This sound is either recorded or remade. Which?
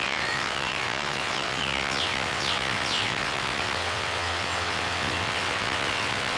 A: remade